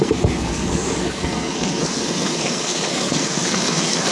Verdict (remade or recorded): remade